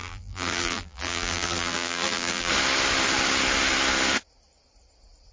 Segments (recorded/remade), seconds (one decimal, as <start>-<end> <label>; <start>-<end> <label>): 0.0-2.5 remade; 2.5-5.3 recorded

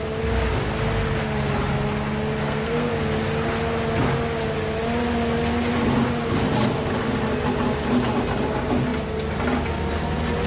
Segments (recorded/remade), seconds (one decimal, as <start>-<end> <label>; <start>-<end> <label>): 0.0-2.4 recorded; 2.4-2.9 remade; 2.9-10.5 recorded

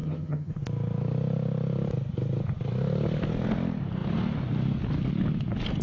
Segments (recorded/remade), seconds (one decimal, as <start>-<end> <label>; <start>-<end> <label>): 0.0-0.5 remade; 0.5-5.8 recorded